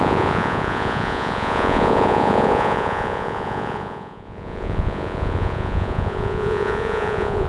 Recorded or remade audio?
remade